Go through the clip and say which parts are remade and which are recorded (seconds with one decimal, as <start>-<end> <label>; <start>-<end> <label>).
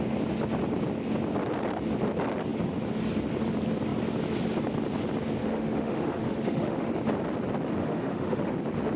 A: 0.0-5.4 recorded; 5.4-6.9 remade; 6.9-7.8 recorded; 7.8-8.5 remade; 8.5-9.0 recorded